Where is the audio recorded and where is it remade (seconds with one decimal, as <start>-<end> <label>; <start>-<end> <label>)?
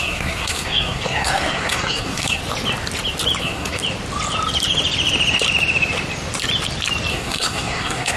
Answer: 0.0-2.4 remade; 2.4-3.4 recorded; 3.4-3.8 remade; 3.8-7.1 recorded; 7.1-8.2 remade